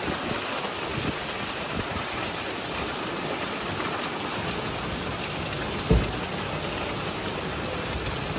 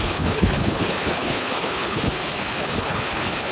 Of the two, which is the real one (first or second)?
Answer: first